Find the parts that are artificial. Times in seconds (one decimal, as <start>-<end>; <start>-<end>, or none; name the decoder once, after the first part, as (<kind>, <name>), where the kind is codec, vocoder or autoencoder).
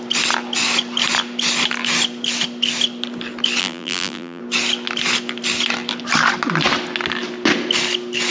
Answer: 3.6-4.4 (vocoder, BigVGAN v2)